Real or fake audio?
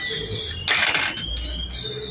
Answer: real